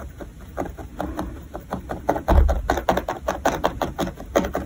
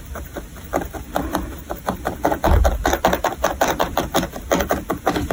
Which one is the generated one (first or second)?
second